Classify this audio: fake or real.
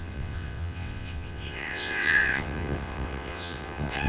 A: fake